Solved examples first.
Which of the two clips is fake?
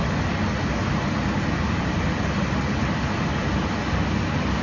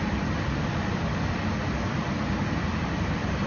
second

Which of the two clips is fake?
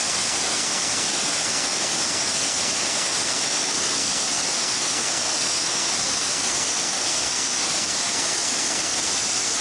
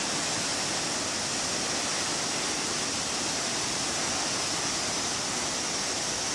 first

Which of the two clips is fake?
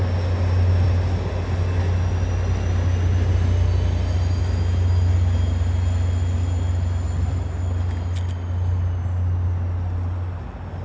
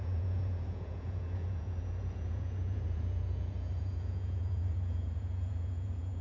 second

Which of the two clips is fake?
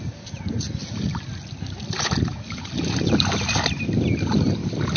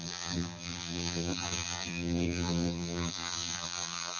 second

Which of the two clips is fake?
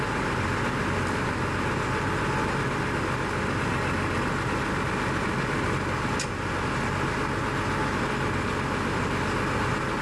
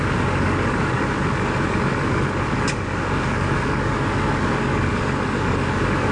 second